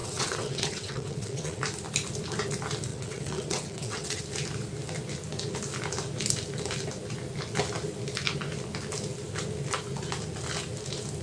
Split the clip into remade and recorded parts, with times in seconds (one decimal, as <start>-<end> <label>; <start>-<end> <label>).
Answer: 0.0-1.6 remade; 1.6-2.9 recorded; 2.9-4.2 remade; 4.2-11.2 recorded